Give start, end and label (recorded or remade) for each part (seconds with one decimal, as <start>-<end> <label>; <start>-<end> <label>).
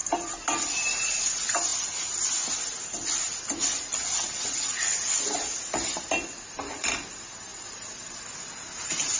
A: 0.0-9.2 recorded